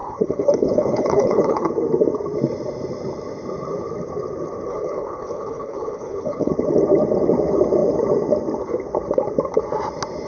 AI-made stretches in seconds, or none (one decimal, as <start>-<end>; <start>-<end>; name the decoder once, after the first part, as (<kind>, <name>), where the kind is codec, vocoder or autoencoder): 0.0-1.7 (codec, HILCodec); 4.7-6.5